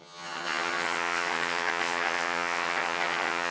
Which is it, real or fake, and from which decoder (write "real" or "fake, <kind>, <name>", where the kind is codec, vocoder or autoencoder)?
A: fake, vocoder, HiFi-GAN